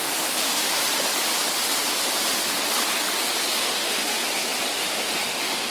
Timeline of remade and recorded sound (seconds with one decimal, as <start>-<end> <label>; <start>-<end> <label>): 0.0-0.8 remade; 0.8-3.6 recorded; 3.6-4.2 remade; 4.2-4.7 recorded; 4.7-5.7 remade